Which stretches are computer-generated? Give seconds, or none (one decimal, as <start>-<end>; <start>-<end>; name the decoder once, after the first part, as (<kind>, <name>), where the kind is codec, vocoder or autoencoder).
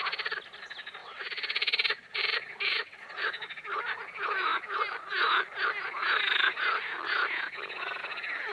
1.0-2.2 (vocoder, WaveNeXt); 2.7-3.3